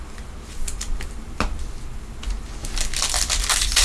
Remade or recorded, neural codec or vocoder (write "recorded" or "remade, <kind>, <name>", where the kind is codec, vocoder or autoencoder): recorded